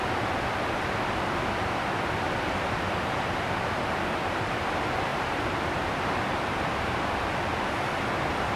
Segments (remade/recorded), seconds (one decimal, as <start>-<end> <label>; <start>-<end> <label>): 0.0-8.6 recorded

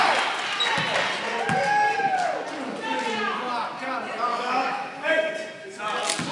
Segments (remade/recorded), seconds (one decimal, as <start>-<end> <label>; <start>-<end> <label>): 0.0-4.3 recorded; 4.3-5.3 remade; 5.3-6.3 recorded

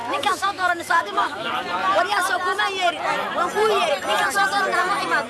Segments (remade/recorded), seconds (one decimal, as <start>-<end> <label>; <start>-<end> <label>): 0.0-1.5 remade; 1.5-5.3 recorded

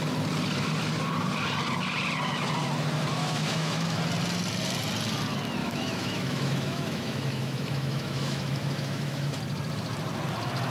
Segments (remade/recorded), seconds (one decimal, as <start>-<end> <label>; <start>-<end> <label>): 0.0-3.2 recorded; 3.2-4.0 remade; 4.0-5.6 recorded; 5.6-9.4 remade; 9.4-10.7 recorded

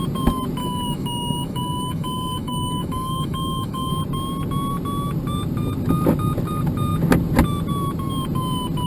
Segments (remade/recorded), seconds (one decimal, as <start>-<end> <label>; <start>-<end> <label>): 0.0-0.6 recorded; 0.6-3.9 remade; 3.9-8.9 recorded

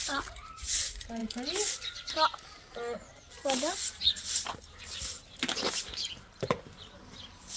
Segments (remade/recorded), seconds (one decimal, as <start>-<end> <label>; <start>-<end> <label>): 0.0-7.6 recorded

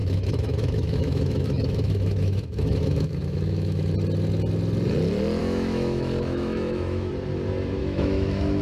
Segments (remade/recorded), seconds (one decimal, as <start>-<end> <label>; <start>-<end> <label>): 0.0-3.9 remade; 3.9-5.4 recorded; 5.4-7.1 remade; 7.1-7.8 recorded; 7.8-8.6 remade

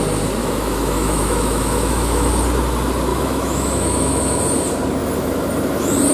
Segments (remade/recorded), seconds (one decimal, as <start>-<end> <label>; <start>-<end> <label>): 0.0-0.4 recorded; 0.4-2.3 remade; 2.3-3.1 recorded; 3.1-4.4 remade; 4.4-6.1 recorded